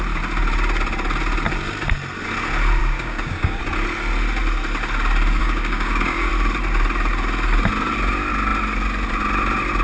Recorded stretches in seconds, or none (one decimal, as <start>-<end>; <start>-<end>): 0.0-2.8; 3.6-5.4; 6.3-9.8